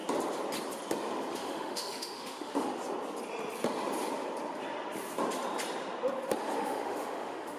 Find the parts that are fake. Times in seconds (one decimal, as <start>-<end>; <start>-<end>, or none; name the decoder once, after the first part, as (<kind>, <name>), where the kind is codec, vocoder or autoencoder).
1.3-2.7 (autoencoder, DAC-VAE); 6.6-7.6